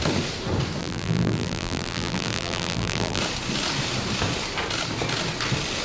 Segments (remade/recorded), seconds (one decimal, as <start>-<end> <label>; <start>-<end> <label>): 0.0-0.8 recorded; 0.8-3.2 remade; 3.2-5.8 recorded